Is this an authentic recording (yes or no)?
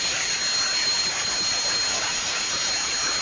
yes